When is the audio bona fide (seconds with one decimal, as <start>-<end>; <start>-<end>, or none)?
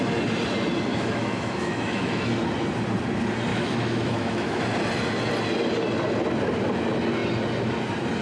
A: 0.0-0.9; 2.2-3.5; 4.6-8.2